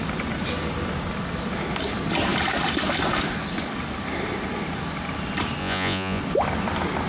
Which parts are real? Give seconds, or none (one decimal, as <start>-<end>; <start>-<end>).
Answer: 0.0-5.6; 6.2-7.1